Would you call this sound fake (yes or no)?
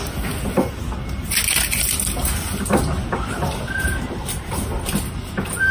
no